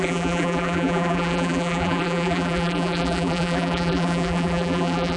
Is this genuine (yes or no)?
no